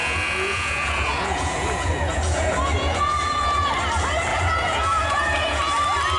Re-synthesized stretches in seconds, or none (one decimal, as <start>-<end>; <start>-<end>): 0.0-3.7; 4.3-5.7